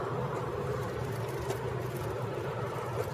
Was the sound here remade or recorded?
recorded